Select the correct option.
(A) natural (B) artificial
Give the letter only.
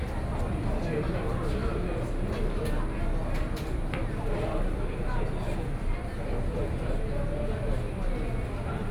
A